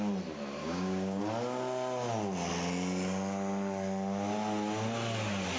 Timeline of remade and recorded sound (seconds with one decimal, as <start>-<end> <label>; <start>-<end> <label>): 0.0-0.6 recorded; 0.6-1.2 remade; 1.2-5.6 recorded